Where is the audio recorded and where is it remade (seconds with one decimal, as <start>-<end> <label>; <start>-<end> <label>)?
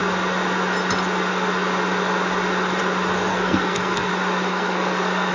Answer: 0.0-3.3 recorded; 3.3-4.1 remade; 4.1-4.5 recorded; 4.5-5.3 remade